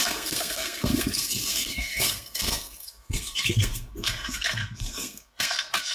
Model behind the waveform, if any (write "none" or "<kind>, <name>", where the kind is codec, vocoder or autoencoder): codec, SNAC